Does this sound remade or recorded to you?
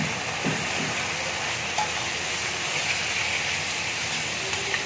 recorded